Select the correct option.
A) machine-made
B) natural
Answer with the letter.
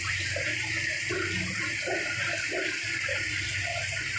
B